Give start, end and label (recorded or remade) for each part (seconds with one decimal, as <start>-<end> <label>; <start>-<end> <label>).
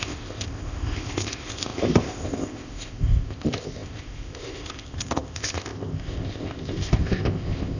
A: 0.0-7.8 remade